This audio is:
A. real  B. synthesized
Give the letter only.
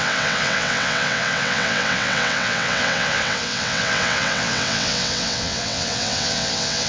B